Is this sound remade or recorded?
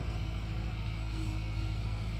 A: remade